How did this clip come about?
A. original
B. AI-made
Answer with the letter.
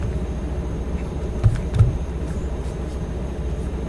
B